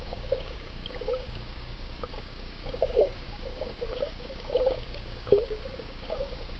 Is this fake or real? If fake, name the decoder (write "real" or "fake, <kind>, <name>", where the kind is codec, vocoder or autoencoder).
fake, codec, DAC